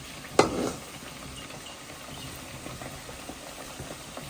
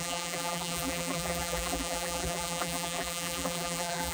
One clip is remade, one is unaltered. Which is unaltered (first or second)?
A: first